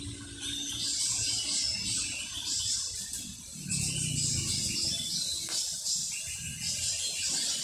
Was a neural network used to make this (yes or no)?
no